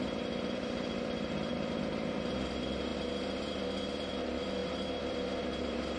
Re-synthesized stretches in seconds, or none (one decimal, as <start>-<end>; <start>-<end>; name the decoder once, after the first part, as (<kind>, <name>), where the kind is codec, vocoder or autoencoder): 4.6-6.0 (vocoder, BigVGAN v2)

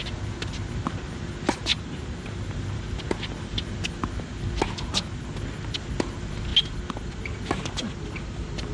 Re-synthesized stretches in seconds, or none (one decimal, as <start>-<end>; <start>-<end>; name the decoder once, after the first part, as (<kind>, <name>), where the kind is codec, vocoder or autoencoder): 1.7-2.6 (vocoder, BigVGAN v2)

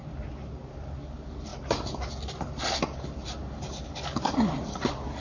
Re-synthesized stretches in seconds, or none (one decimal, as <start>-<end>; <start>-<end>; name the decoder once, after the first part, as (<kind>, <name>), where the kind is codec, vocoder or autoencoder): 3.2-4.3 (vocoder, BigVGAN v2)

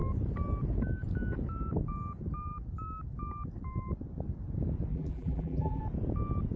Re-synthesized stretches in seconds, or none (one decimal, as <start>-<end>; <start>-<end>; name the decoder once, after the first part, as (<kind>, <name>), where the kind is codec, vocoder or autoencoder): 4.9-5.8 (vocoder, BigVGAN v2)

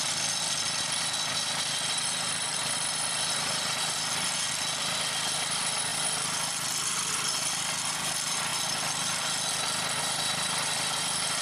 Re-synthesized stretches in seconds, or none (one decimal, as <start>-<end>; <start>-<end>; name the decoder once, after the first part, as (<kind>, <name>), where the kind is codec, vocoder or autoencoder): 0.0-8.5 (vocoder, BigVGAN v2); 10.0-11.4

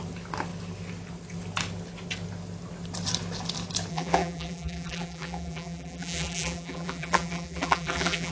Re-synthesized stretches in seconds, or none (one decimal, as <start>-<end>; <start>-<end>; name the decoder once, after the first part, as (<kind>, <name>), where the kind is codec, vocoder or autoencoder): 3.9-8.3 (vocoder, BigVGAN v2)

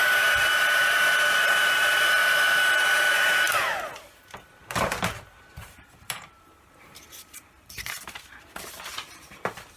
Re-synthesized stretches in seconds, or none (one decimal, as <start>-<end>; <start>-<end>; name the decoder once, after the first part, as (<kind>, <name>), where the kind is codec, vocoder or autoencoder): 0.0-0.8 (vocoder, BigVGAN v2); 1.4-2.2; 3.1-9.8